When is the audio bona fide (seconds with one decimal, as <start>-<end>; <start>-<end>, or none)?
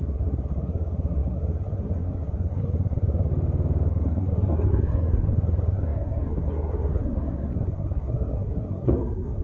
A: 3.3-3.9